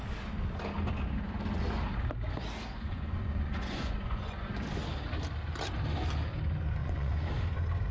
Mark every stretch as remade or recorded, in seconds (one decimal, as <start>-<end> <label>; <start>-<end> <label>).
0.0-2.7 recorded; 2.7-4.5 remade; 4.5-6.8 recorded; 6.8-7.3 remade; 7.3-7.9 recorded